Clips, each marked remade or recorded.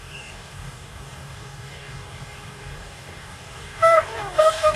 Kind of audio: remade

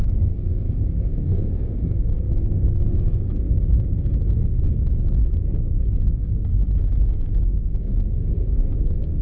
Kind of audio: remade